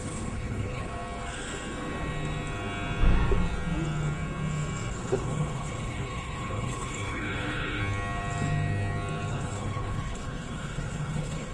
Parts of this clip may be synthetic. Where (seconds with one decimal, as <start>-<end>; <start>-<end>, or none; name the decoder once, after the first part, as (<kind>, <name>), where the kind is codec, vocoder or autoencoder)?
0.0-0.9 (codec, HILCodec); 4.9-7.8; 9.3-11.5